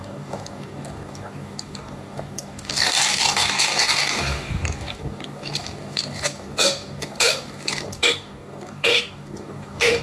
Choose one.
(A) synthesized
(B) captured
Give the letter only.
A